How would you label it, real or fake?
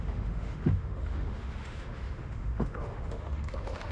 fake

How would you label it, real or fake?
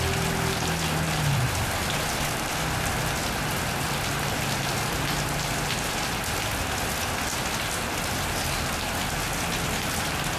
real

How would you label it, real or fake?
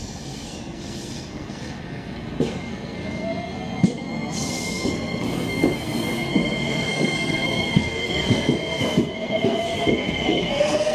fake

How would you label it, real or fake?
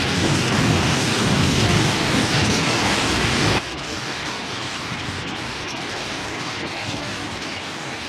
fake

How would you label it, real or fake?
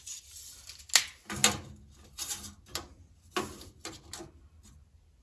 real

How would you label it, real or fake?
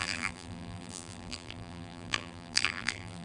fake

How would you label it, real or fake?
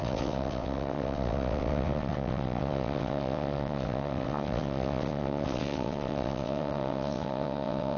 fake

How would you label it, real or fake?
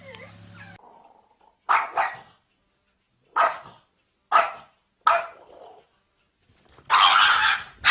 real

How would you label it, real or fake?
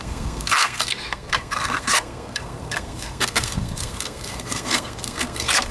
fake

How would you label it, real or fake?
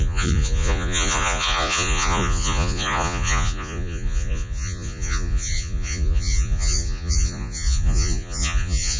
fake